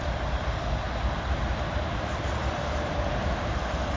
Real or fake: fake